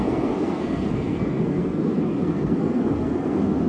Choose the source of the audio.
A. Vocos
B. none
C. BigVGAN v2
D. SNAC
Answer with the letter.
D